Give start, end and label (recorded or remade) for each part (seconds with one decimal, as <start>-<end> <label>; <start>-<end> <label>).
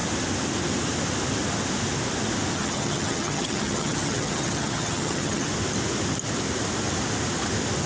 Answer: 0.0-2.5 recorded; 2.5-5.5 remade; 5.5-7.9 recorded